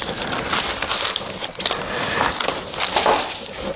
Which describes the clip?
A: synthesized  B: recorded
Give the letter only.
B